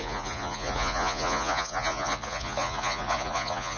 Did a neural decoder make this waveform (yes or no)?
yes